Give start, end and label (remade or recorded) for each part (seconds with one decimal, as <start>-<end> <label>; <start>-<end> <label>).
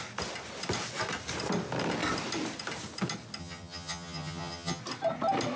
0.0-3.4 recorded; 3.4-4.8 remade; 4.8-5.6 recorded